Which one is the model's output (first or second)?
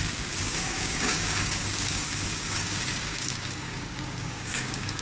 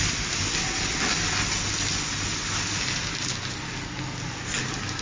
first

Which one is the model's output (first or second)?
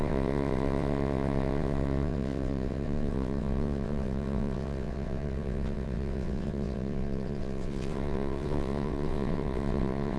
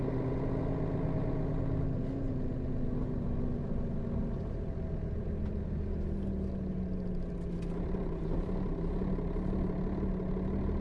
first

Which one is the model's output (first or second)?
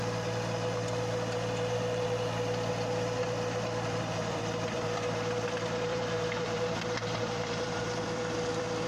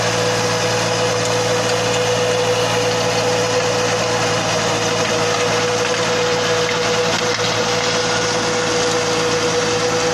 first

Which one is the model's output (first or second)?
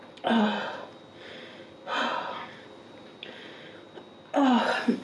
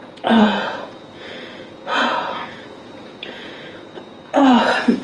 second